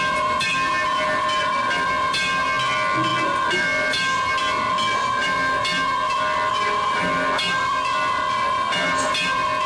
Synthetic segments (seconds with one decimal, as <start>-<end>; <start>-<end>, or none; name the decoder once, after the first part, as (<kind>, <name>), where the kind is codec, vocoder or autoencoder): none